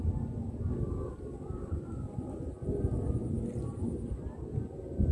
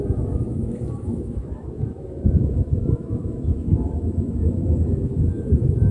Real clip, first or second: first